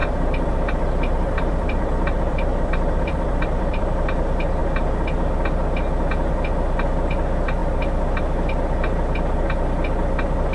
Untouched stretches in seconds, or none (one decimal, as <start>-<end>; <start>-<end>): 3.9-10.5